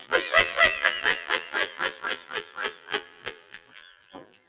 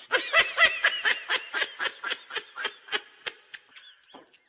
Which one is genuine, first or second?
second